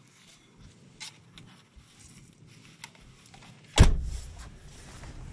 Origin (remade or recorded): recorded